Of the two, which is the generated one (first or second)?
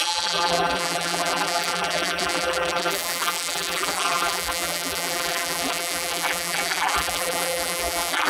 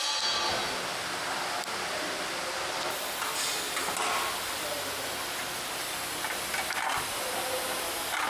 first